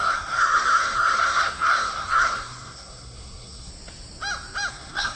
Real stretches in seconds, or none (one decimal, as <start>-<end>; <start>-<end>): 3.7-4.7